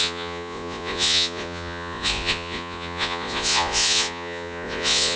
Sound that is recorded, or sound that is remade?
remade